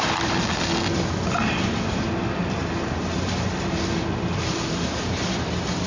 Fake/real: fake